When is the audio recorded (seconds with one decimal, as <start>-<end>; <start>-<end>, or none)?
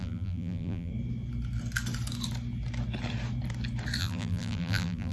0.9-4.0